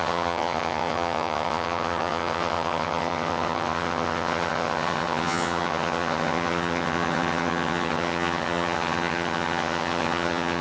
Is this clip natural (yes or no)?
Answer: no